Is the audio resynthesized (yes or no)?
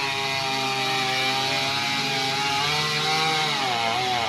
no